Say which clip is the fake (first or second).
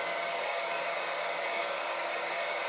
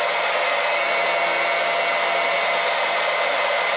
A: first